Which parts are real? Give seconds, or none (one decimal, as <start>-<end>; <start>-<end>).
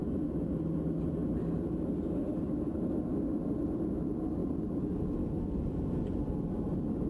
0.0-0.5